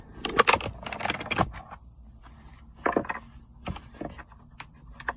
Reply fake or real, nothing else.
real